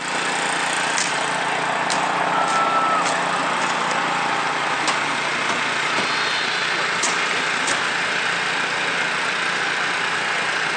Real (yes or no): yes